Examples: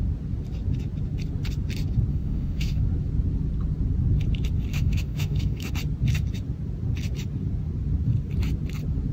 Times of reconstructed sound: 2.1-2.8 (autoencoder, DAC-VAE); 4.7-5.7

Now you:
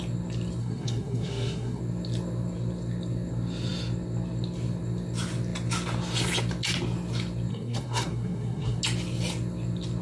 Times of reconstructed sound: 0.6-1.8 (codec, SNAC); 7.5-8.8

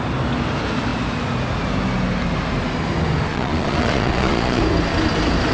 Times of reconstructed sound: 3.3-4.6 (vocoder, Vocos)